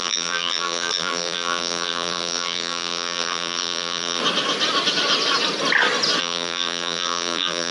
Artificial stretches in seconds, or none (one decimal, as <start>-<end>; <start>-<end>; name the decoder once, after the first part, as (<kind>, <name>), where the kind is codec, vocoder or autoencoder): 0.0-4.2 (vocoder, BigVGAN v2); 6.2-7.7